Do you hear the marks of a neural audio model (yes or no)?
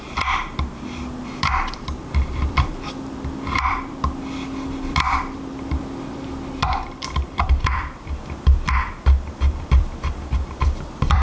yes